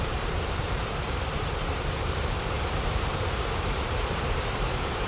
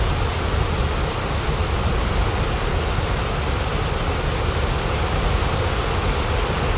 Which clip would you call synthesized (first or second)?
first